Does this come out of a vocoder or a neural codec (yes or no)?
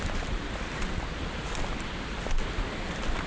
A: no